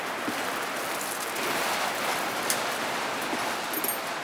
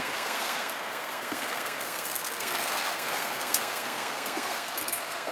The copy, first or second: second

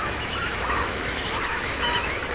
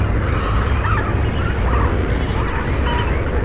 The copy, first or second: first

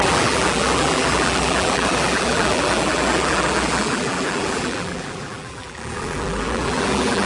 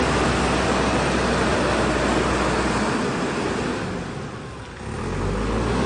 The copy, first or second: first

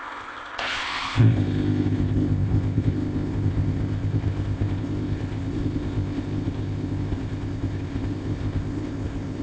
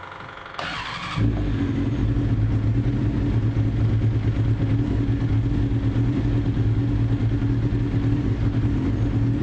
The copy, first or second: first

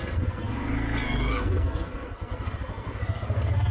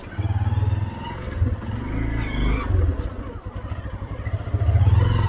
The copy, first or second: first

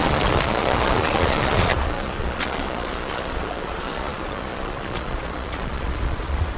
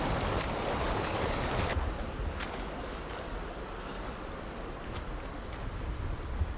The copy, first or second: first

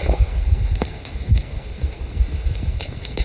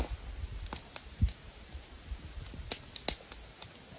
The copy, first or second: first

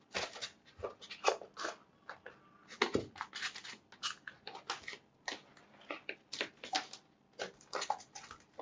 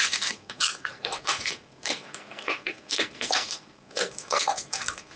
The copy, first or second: second